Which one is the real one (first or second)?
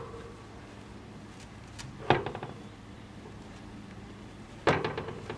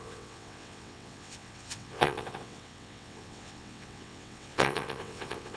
first